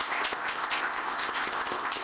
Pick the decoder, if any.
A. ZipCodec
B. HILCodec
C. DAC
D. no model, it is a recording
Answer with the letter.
A